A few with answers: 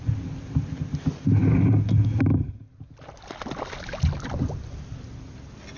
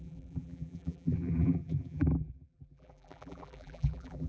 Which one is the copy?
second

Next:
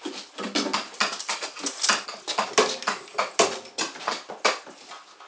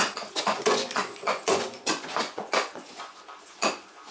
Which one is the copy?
second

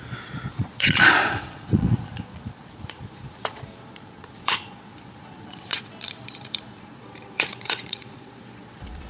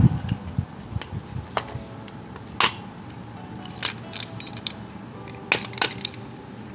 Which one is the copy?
first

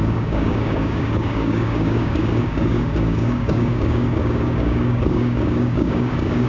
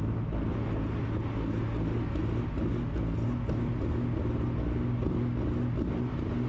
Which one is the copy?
first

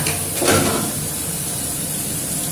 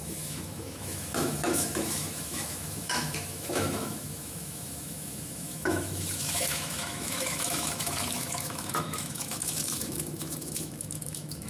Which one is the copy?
second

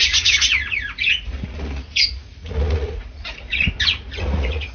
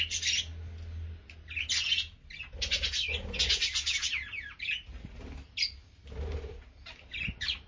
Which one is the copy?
first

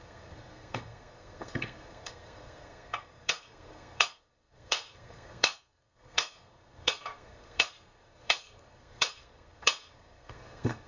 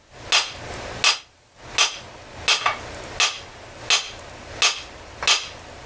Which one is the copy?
first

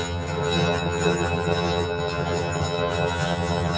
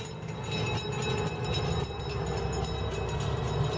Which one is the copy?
first